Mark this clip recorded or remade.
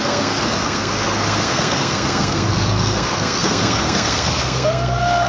remade